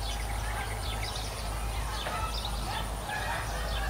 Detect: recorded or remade recorded